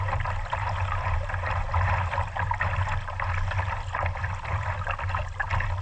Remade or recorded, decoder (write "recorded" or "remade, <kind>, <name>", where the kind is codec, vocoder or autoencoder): recorded